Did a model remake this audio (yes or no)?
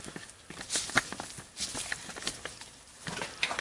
no